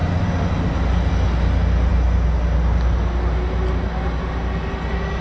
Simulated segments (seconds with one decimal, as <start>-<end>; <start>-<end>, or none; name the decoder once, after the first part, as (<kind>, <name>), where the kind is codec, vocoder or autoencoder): none